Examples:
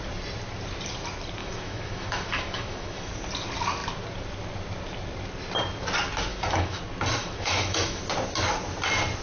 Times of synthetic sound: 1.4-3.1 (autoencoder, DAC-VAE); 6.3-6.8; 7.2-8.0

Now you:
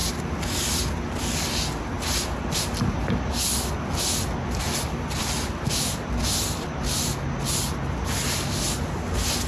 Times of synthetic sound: none